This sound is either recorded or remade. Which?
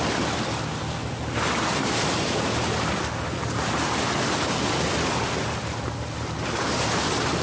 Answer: recorded